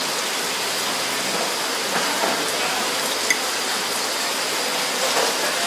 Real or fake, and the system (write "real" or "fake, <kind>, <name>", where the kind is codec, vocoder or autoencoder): real